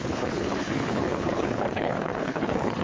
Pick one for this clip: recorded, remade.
remade